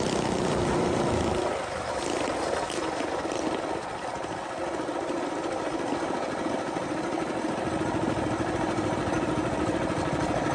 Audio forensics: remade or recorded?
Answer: recorded